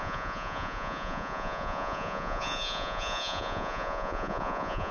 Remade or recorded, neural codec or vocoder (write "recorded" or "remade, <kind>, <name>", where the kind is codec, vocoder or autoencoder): remade, vocoder, Vocos